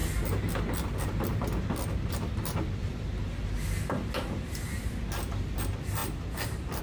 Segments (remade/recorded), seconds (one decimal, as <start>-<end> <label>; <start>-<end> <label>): 0.0-6.8 recorded